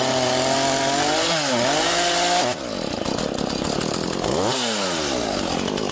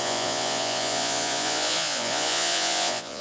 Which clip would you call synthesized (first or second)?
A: second